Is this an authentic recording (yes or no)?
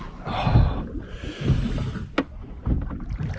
yes